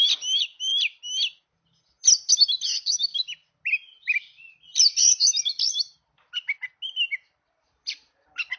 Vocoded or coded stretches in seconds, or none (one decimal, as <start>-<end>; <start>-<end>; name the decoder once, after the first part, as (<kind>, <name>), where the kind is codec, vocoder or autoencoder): none